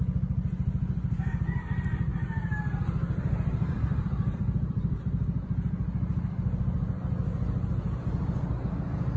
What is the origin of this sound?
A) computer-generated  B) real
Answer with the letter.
B